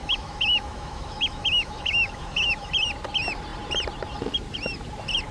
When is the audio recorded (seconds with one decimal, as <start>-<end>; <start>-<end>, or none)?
2.7-5.3